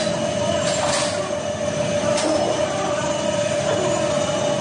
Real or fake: real